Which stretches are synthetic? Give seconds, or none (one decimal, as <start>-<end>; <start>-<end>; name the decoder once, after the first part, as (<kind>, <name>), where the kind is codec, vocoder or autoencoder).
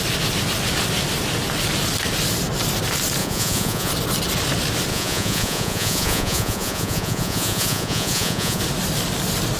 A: 3.2-3.9 (vocoder, Vocos); 4.9-8.6